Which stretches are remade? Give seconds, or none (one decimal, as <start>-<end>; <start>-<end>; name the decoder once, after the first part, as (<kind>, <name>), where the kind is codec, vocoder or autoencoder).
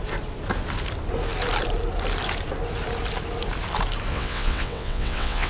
4.1-5.5 (vocoder, WaveNeXt)